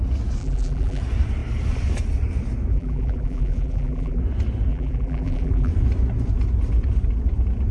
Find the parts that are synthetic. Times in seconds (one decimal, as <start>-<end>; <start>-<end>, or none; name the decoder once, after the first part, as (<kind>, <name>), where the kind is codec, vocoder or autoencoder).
0.4-1.0 (vocoder, BigVGAN v2); 2.7-4.2; 4.7-5.7